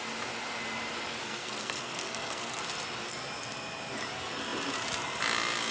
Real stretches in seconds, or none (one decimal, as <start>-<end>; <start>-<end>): 0.0-1.2; 2.6-5.7